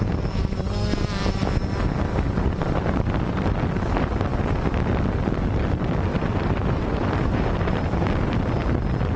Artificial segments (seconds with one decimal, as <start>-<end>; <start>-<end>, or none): 2.1-3.3; 6.1-7.8

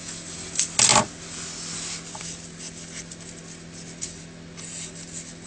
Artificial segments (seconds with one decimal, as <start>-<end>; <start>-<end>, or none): none